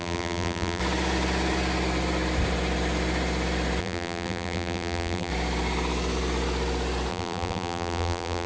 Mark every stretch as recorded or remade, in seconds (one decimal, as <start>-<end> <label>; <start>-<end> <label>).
0.0-0.8 remade; 0.8-3.8 recorded; 3.8-5.3 remade; 5.3-7.1 recorded; 7.1-8.5 remade